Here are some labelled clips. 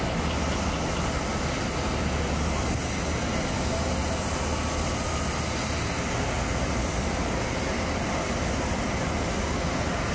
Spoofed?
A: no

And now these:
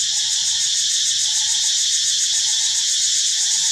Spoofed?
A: yes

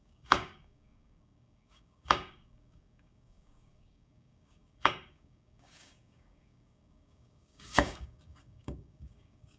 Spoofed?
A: yes